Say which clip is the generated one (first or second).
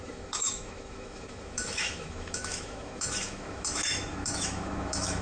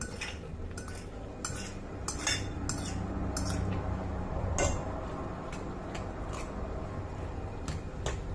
first